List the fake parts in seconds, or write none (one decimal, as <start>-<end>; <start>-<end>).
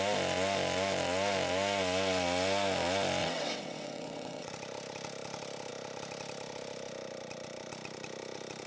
3.2-4.5